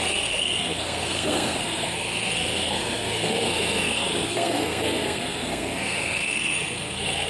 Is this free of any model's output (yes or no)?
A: no